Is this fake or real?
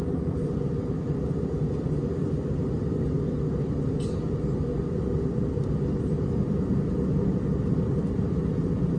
real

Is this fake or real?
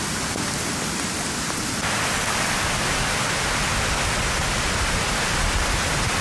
real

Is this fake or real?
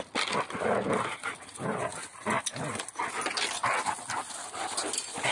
real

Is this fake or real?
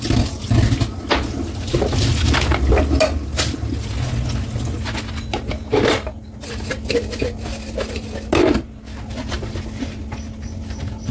real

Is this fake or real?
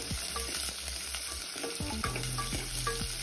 real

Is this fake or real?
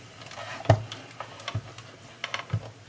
real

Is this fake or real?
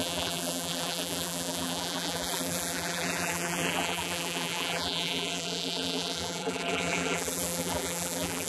fake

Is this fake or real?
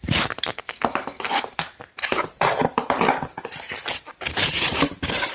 fake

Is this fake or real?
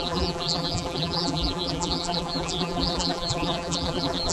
fake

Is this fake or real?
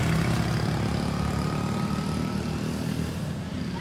real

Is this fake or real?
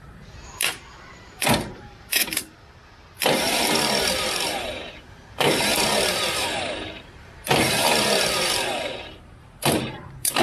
fake